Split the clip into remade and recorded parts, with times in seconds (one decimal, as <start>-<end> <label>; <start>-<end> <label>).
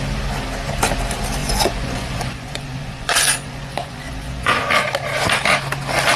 0.0-1.4 recorded; 1.4-4.7 remade; 4.7-6.2 recorded